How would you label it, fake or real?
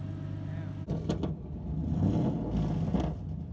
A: real